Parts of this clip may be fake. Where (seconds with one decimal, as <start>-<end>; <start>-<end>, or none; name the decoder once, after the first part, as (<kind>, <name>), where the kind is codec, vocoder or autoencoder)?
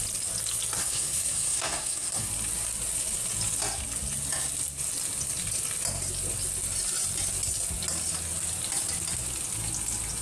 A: 0.8-2.3 (codec, SNAC)